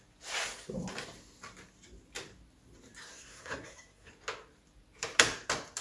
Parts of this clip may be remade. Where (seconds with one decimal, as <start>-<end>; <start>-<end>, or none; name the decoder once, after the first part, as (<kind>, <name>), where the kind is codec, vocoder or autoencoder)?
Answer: 3.1-4.1 (codec, SNAC)